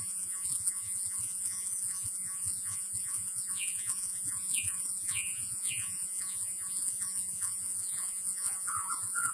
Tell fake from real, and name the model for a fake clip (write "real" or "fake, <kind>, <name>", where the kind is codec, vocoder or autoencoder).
fake, vocoder, Vocos